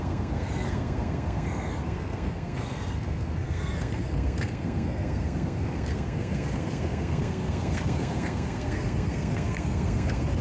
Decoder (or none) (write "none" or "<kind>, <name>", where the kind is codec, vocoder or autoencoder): codec, SNAC